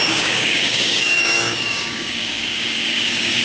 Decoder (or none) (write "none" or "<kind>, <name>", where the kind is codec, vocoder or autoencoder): codec, DAC